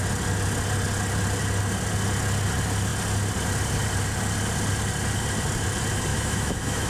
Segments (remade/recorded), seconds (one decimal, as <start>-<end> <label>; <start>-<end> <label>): 0.0-6.1 recorded; 6.1-6.9 remade